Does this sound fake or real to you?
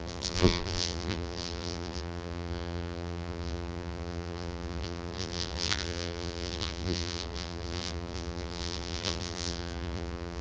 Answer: fake